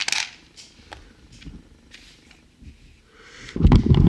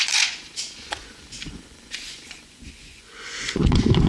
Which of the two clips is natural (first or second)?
first